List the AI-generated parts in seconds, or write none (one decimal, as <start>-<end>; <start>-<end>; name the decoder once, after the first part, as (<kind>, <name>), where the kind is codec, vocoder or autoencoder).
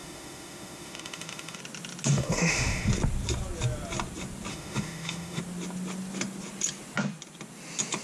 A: 0.0-1.6 (autoencoder, DAC-VAE); 2.1-2.9; 4.5-5.4